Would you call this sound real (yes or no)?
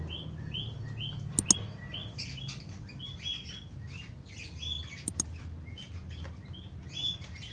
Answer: yes